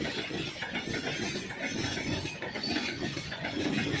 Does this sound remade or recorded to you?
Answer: remade